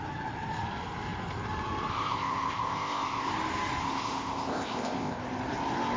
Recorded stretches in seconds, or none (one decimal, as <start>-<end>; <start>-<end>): 0.0-1.9; 3.3-3.8; 5.2-6.0